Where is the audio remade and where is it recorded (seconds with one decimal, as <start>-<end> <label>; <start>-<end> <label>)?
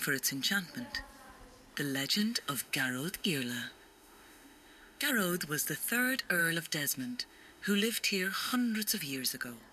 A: 0.0-2.2 recorded; 2.2-5.1 remade; 5.1-6.4 recorded; 6.4-9.0 remade; 9.0-9.7 recorded